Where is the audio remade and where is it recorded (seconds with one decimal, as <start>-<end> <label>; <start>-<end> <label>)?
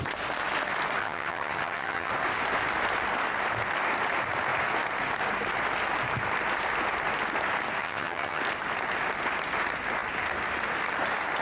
0.0-1.0 recorded; 1.0-2.1 remade; 2.1-7.8 recorded; 7.8-8.4 remade; 8.4-11.4 recorded